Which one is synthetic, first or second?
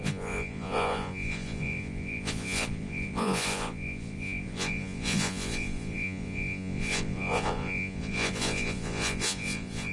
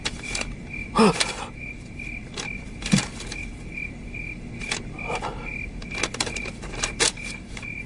first